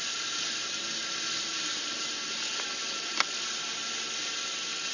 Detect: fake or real real